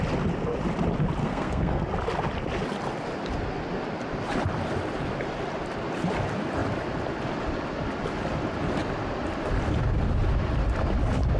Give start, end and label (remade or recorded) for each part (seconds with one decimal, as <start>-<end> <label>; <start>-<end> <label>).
0.0-1.2 recorded; 1.2-1.8 remade; 1.8-11.4 recorded